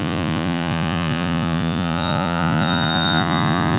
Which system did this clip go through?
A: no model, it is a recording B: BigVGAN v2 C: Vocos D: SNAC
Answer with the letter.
C